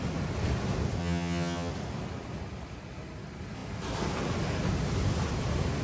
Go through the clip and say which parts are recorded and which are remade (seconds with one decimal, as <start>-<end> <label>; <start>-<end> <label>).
0.0-1.0 recorded; 1.0-1.7 remade; 1.7-5.8 recorded